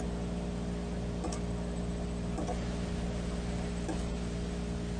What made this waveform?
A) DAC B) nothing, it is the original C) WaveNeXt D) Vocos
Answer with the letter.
B